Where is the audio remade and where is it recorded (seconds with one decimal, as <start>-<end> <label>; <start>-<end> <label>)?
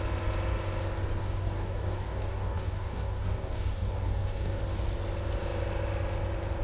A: 0.0-1.2 recorded; 1.2-4.6 remade; 4.6-6.6 recorded